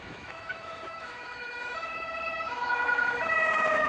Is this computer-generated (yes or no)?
yes